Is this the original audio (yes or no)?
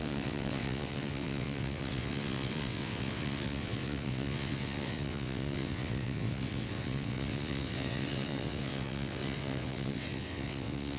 no